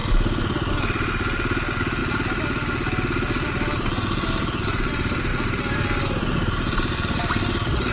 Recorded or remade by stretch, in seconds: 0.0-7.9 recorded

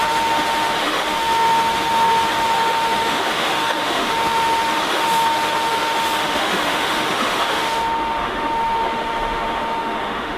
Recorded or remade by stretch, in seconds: 0.0-10.4 remade

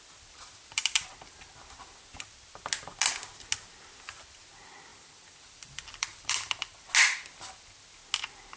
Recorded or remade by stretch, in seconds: 0.0-0.8 recorded; 0.8-1.5 remade; 1.5-4.9 recorded; 4.9-6.9 remade; 6.9-8.6 recorded

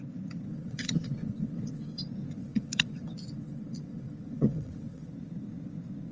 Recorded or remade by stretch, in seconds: 0.0-0.5 recorded; 0.5-2.0 remade; 2.0-2.4 recorded; 2.4-5.1 remade; 5.1-6.1 recorded

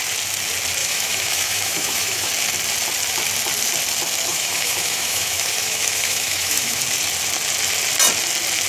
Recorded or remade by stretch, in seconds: 0.0-0.8 recorded; 0.8-2.3 remade; 2.3-4.3 recorded; 4.3-6.8 remade; 6.8-8.7 recorded